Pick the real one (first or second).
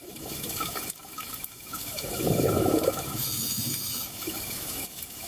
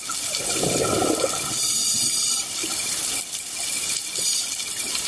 second